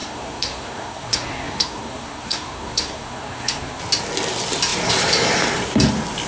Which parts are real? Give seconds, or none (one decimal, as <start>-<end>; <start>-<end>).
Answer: 3.8-6.3